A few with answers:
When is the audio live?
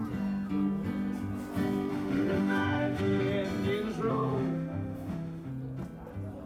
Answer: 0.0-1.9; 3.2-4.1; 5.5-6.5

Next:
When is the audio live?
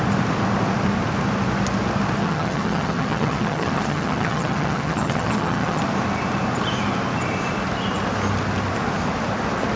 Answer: 0.0-2.2; 5.8-9.8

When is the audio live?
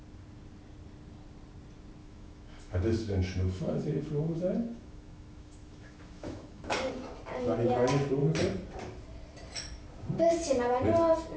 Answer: 0.0-2.0; 6.9-11.4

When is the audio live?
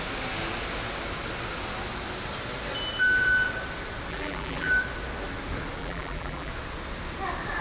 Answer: 0.0-4.1; 4.7-5.8; 6.5-7.6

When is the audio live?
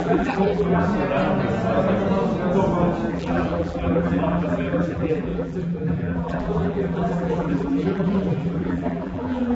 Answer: 0.9-3.1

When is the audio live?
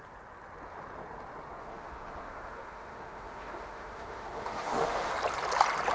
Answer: 0.0-1.6; 5.1-5.9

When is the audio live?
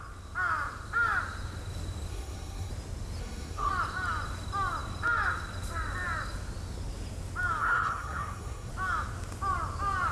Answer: 0.0-2.1; 2.7-3.2; 3.7-7.6; 8.7-10.1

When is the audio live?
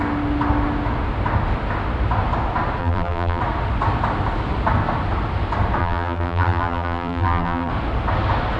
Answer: 0.0-2.8; 3.4-5.8; 7.7-8.6